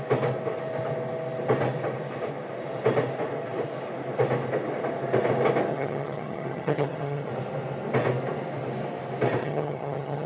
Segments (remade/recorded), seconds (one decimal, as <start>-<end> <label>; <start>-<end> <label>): 0.0-5.7 recorded; 5.7-7.3 remade; 7.3-9.4 recorded; 9.4-10.3 remade